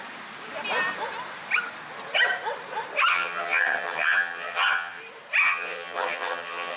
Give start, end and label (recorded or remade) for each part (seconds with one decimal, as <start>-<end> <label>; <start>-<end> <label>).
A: 0.0-3.1 recorded; 3.1-5.0 remade; 5.0-5.4 recorded; 5.4-6.8 remade